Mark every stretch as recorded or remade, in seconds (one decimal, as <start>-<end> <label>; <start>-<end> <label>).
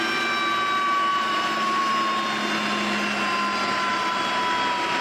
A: 0.0-1.1 recorded; 1.1-1.8 remade; 1.8-3.9 recorded; 3.9-4.4 remade; 4.4-5.0 recorded